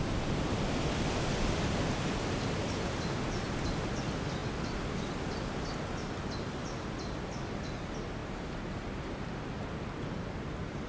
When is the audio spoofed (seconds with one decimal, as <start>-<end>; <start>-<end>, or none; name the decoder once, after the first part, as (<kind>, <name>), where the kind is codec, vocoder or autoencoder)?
none